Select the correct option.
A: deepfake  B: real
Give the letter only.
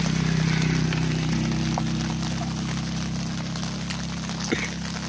B